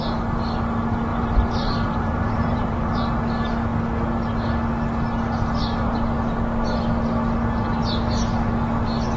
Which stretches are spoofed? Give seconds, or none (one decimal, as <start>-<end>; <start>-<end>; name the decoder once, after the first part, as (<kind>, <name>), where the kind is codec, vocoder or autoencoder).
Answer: 1.1-3.0 (vocoder, BigVGAN v2)